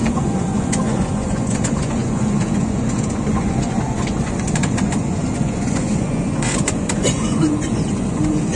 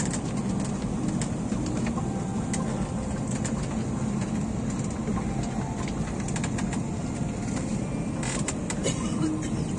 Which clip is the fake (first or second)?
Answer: first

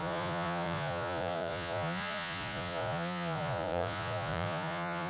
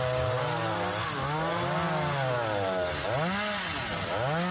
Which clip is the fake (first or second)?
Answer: first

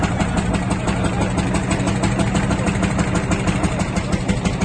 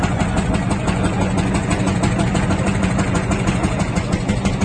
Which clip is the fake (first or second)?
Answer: second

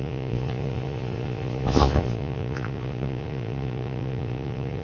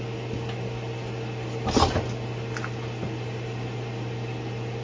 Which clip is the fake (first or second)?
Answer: first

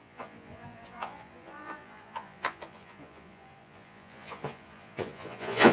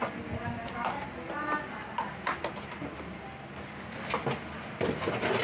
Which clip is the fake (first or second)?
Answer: first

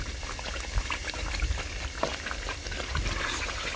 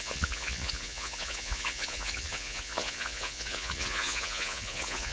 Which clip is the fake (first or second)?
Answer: second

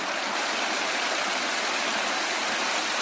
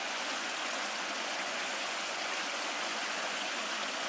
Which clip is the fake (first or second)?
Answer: second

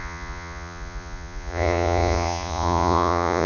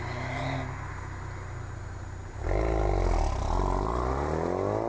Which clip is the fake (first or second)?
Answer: first